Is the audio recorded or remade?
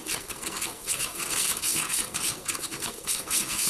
remade